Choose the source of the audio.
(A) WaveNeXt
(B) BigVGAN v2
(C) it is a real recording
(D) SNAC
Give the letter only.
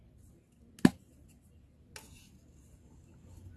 C